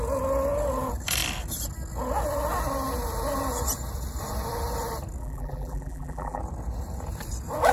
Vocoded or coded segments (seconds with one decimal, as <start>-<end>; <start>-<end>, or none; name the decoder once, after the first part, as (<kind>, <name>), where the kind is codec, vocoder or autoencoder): 5.2-6.4 (vocoder, BigVGAN v2)

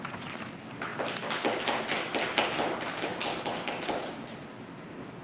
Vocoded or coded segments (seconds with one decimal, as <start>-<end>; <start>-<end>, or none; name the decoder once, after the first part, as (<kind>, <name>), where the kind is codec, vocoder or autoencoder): none